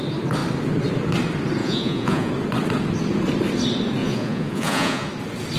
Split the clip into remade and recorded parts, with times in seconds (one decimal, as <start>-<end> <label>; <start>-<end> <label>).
0.0-1.6 recorded; 1.6-2.3 remade; 2.3-4.0 recorded; 4.0-5.1 remade; 5.1-5.6 recorded